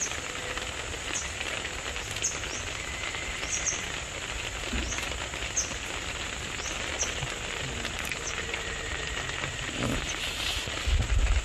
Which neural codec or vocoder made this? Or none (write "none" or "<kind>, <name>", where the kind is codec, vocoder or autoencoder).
none